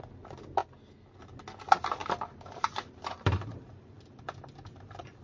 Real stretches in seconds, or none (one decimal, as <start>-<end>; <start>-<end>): 0.0-2.0